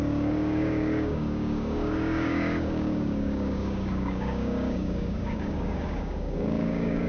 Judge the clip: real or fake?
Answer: fake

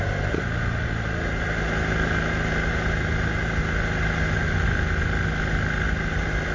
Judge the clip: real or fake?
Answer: real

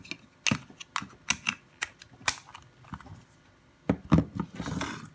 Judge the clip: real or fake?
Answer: real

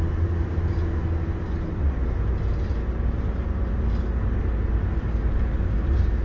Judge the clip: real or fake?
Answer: real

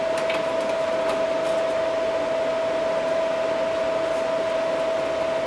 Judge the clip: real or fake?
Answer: real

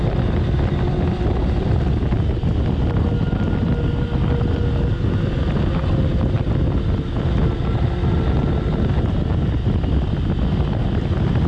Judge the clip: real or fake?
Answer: real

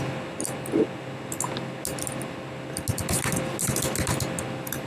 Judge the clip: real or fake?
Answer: real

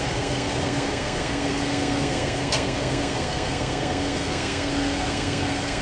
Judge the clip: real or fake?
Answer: fake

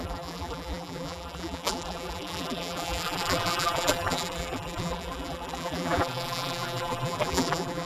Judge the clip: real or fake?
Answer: fake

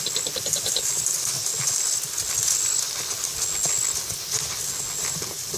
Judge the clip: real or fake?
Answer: real